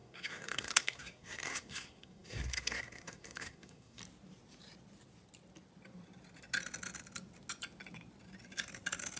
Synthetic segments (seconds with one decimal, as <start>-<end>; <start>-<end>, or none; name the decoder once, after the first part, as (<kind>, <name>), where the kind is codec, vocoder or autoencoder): 0.0-4.0 (codec, SNAC)